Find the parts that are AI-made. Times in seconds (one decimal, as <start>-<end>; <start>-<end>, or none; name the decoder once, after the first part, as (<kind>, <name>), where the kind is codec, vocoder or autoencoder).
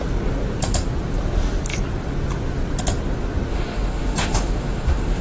3.5-5.2 (autoencoder, DAC-VAE)